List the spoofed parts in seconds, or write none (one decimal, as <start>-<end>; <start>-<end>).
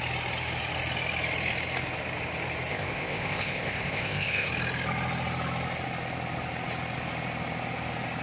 2.7-4.5